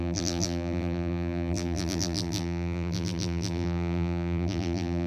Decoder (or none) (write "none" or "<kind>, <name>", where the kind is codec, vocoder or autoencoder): vocoder, BigVGAN v2